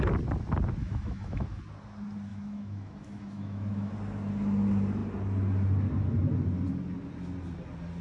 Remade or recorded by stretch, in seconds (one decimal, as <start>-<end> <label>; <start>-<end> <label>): 0.0-0.8 recorded; 0.8-1.6 remade; 1.6-2.3 recorded; 2.3-3.9 remade; 3.9-8.0 recorded